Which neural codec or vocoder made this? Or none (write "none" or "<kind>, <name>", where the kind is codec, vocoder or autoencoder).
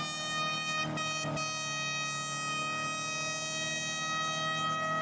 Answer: none